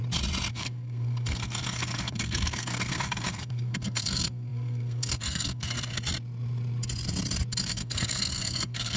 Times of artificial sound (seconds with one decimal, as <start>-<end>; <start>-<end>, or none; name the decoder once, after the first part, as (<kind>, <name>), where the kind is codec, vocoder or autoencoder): 0.5-5.9 (codec, SNAC); 7.6-9.0